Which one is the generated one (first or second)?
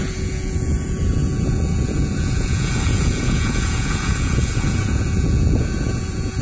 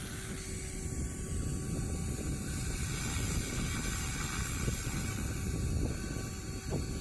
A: first